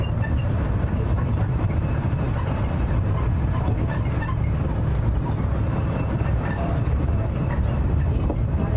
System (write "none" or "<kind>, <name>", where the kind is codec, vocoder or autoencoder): vocoder, BigVGAN v2